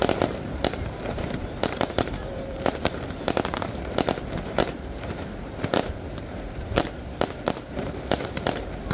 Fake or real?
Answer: fake